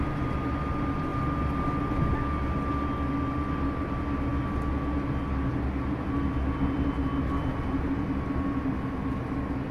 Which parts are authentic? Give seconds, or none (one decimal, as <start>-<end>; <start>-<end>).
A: 0.0-9.7